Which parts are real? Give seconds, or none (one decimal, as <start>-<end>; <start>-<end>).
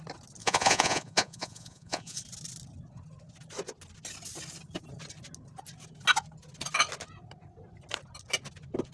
0.0-0.4; 2.2-8.9